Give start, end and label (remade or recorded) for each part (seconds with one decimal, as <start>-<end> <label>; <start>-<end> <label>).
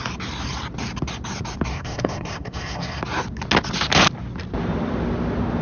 0.0-1.7 recorded; 1.7-3.0 remade; 3.0-5.6 recorded